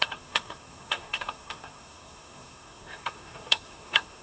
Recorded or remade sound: remade